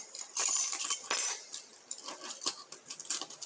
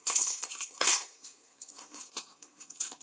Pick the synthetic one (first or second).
second